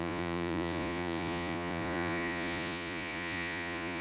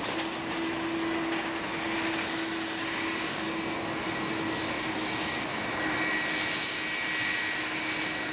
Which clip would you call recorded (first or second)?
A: second